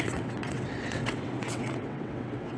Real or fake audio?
fake